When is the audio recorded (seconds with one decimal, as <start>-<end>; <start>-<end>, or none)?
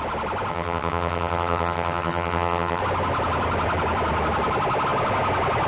0.0-0.5; 2.8-5.7